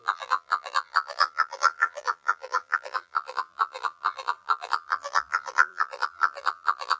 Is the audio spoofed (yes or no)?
yes